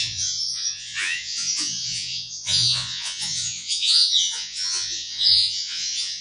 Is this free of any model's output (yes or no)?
no